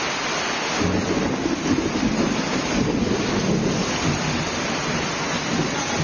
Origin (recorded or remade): recorded